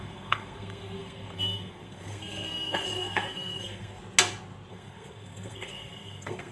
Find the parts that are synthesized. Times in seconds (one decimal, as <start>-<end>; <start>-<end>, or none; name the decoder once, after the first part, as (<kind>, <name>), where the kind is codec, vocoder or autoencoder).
0.0-4.0 (codec, SNAC); 4.7-6.5